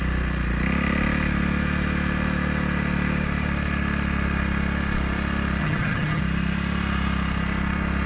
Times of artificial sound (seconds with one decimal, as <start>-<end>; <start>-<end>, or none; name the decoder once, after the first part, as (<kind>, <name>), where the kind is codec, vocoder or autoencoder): 5.6-6.2 (vocoder, HiFi-GAN)